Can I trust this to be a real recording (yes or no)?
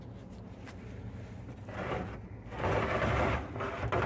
yes